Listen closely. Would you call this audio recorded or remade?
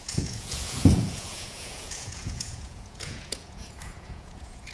remade